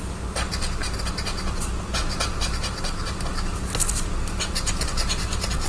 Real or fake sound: real